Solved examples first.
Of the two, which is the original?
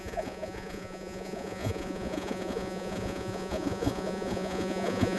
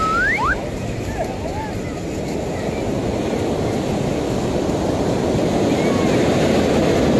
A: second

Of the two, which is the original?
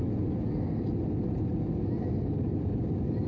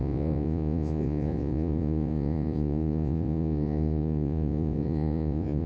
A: first